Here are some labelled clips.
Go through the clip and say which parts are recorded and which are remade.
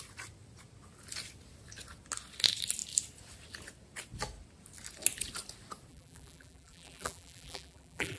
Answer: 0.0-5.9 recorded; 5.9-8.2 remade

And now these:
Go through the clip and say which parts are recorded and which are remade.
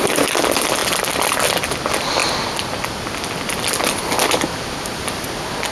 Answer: 0.0-5.7 recorded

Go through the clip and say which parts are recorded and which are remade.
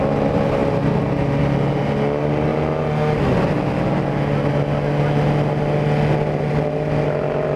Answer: 0.0-7.6 recorded